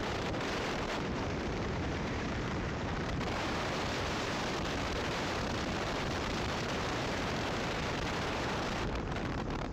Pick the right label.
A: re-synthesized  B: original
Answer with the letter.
A